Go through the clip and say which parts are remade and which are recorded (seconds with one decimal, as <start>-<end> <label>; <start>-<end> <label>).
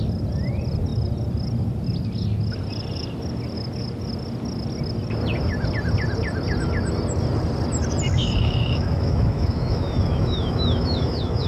0.0-8.2 recorded; 8.2-11.5 remade